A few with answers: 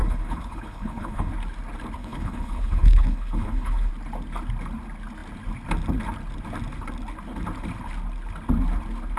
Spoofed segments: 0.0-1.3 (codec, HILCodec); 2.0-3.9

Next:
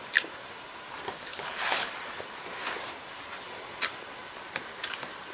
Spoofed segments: 1.3-1.9 (codec, HILCodec)